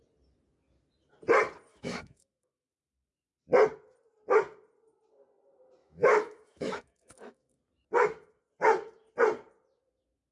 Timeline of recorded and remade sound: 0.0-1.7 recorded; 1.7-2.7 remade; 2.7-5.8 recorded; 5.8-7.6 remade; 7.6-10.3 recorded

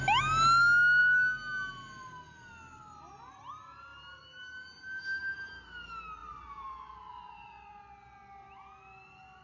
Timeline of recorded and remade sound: 0.0-6.2 recorded; 6.2-7.8 remade; 7.8-9.4 recorded

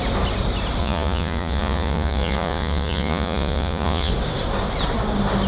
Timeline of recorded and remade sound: 0.0-0.8 recorded; 0.8-4.1 remade; 4.1-5.5 recorded

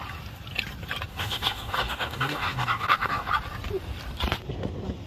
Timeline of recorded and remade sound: 0.0-1.1 recorded; 1.1-3.3 remade; 3.3-5.1 recorded

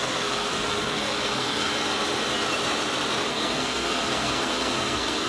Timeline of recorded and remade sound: 0.0-1.7 remade; 1.7-3.3 recorded; 3.3-5.3 remade